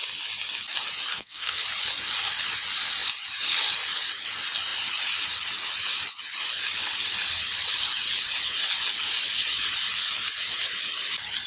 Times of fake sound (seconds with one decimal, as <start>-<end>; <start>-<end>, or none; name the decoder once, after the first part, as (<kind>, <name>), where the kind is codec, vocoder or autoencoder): 1.1-1.6 (codec, SNAC)